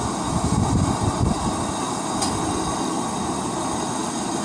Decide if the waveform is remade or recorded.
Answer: recorded